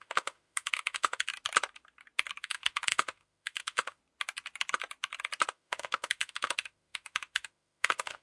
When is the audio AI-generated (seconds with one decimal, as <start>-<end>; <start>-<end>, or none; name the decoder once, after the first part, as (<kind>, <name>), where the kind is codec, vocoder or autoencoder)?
0.0-1.3 (autoencoder, DAC-VAE); 2.4-4.0; 5.5-8.2